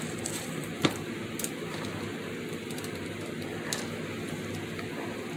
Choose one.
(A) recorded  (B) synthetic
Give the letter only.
B